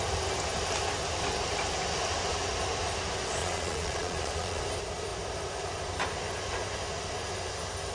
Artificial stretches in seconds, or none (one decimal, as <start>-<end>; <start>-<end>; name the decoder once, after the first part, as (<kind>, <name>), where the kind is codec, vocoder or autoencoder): 3.4-4.6 (vocoder, Vocos)